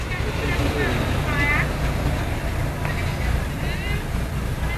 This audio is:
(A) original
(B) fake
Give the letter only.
A